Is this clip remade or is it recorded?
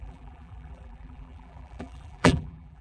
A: remade